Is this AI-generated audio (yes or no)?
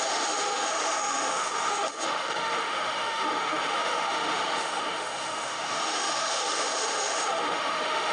yes